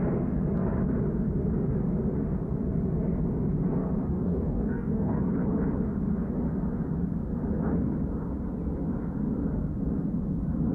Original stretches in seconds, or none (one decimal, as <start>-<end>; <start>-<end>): 0.0-4.1; 5.2-10.7